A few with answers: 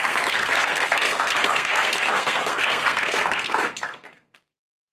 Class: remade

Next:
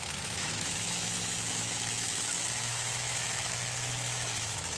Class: remade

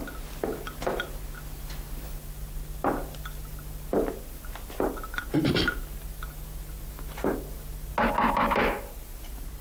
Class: recorded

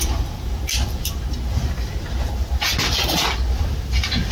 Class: recorded